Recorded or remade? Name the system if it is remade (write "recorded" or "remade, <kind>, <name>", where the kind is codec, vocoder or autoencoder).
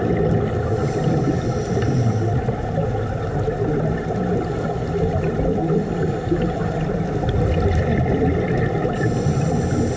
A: recorded